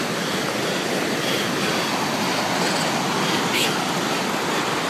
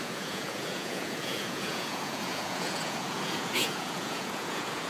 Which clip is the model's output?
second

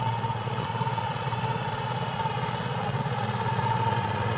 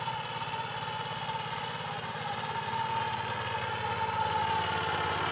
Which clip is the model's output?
first